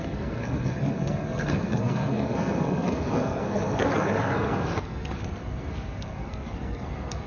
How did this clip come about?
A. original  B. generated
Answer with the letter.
B